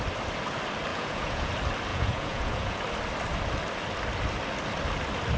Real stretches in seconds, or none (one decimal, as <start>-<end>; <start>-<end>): 0.0-0.9; 1.5-1.9; 2.8-5.4